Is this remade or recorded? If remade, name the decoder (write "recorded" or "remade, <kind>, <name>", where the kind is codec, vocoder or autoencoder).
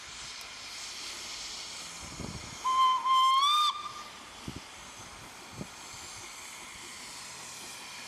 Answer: recorded